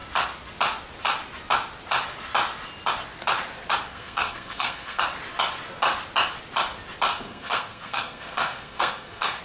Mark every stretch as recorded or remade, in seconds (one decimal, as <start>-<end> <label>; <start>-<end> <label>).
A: 0.0-3.9 recorded; 3.9-5.0 remade; 5.0-7.1 recorded; 7.1-9.4 remade